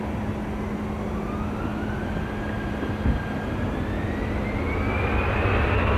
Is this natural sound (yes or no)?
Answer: yes